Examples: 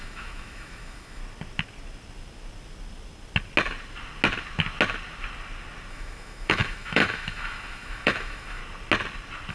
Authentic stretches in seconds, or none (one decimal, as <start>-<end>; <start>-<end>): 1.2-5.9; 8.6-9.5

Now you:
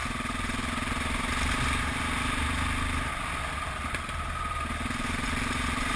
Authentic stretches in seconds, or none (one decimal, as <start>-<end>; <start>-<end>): 0.0-6.0

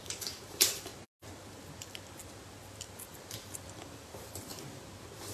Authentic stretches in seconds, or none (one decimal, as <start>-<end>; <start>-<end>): 0.9-3.7; 4.5-5.3